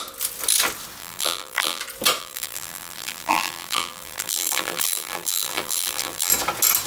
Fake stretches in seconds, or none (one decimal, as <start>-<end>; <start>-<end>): 1.0-1.8; 2.2-6.3